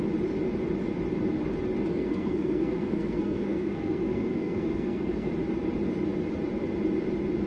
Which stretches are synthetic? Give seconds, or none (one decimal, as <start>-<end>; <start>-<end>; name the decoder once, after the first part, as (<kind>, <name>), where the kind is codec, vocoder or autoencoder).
1.9-5.3 (codec, SNAC)